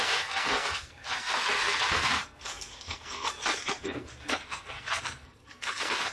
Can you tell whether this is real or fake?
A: fake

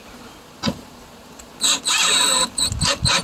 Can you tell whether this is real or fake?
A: real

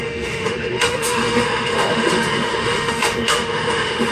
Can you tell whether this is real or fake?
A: fake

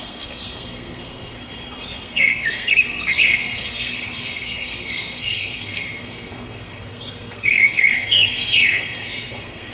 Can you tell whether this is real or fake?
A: fake